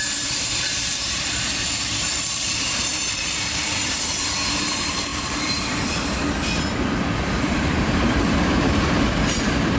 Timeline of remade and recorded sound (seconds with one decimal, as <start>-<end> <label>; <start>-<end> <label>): 0.0-6.2 remade; 6.2-7.3 recorded; 7.3-9.8 remade